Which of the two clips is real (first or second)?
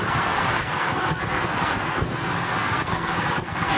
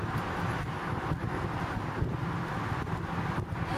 second